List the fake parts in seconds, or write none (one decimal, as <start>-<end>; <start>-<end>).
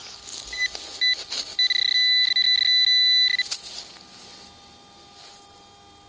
none